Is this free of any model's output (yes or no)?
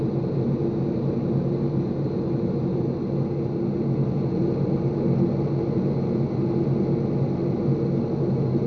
yes